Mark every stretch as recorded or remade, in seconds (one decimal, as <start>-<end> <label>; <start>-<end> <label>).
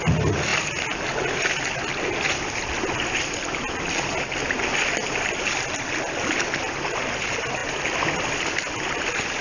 0.0-9.4 recorded